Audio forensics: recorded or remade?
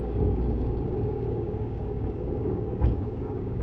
remade